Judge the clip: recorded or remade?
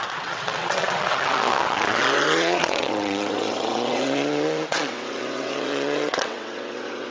remade